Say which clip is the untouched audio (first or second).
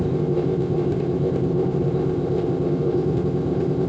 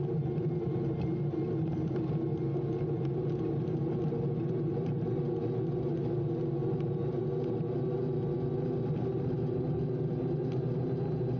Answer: second